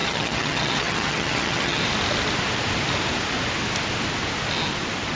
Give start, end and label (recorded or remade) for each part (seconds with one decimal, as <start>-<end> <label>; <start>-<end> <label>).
0.0-1.8 remade; 1.8-5.2 recorded

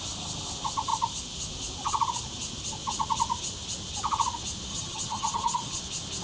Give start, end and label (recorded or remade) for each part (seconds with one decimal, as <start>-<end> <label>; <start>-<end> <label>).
0.0-4.7 recorded; 4.7-5.8 remade; 5.8-6.2 recorded

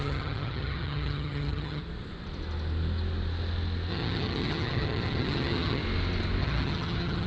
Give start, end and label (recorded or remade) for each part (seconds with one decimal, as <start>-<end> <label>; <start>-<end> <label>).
0.0-1.8 remade; 1.8-3.9 recorded; 3.9-5.8 remade; 5.8-6.4 recorded; 6.4-7.3 remade

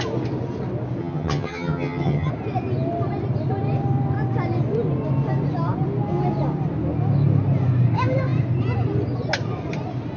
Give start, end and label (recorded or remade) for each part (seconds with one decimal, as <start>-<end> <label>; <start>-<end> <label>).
0.0-1.0 recorded; 1.0-2.3 remade; 2.3-10.2 recorded

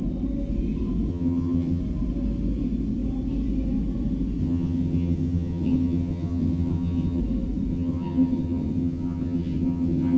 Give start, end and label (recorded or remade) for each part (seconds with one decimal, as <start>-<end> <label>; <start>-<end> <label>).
0.0-1.1 recorded; 1.1-1.8 remade; 1.8-4.4 recorded; 4.4-7.2 remade; 7.2-7.7 recorded; 7.7-10.2 remade

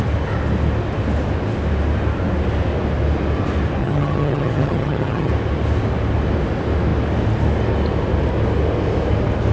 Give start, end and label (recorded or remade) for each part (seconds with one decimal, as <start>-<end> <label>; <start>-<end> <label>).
0.0-3.8 recorded; 3.8-5.3 remade; 5.3-9.5 recorded

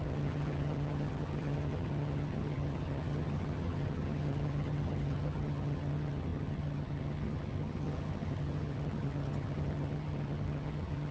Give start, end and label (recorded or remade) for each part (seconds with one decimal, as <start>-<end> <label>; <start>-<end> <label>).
0.0-11.1 remade

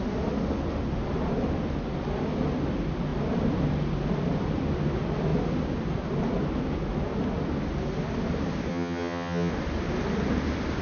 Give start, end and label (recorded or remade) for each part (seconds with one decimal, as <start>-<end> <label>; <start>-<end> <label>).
0.0-8.7 recorded; 8.7-9.5 remade; 9.5-10.8 recorded